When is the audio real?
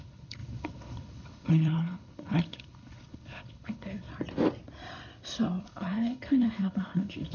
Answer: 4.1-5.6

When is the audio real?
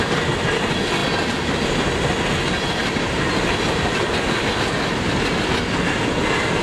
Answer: 0.0-6.6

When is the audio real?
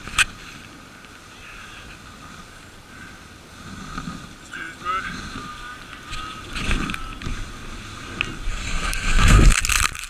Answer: 0.0-8.5; 9.6-10.1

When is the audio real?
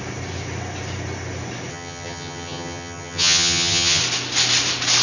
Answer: 0.0-1.7; 4.0-5.0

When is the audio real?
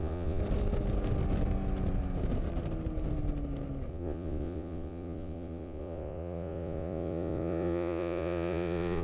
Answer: 0.4-3.9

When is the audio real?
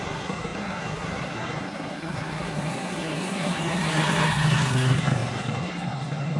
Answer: none